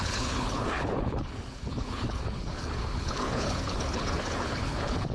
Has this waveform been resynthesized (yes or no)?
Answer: yes